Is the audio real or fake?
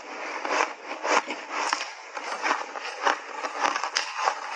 real